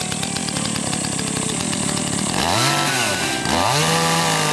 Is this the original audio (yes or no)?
yes